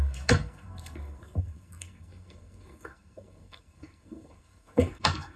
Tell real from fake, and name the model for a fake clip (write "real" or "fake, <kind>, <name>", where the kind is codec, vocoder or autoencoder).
fake, codec, SNAC